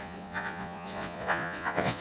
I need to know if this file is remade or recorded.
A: remade